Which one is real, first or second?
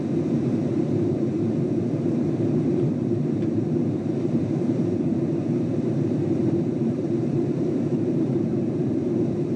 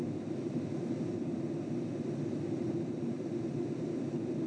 second